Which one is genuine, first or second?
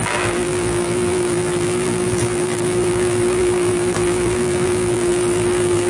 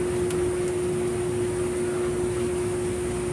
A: second